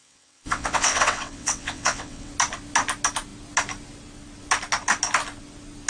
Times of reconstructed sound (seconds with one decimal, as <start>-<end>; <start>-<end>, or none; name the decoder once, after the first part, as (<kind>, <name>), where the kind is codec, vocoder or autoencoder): 0.0-2.3 (vocoder, WaveNeXt)